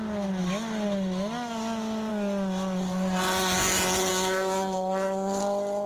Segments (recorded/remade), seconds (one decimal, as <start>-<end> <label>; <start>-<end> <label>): 0.0-4.1 recorded; 4.1-5.4 remade; 5.4-5.9 recorded